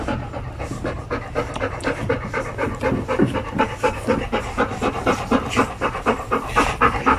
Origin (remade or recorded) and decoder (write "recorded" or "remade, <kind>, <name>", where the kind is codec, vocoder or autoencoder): recorded